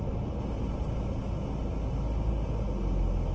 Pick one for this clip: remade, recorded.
recorded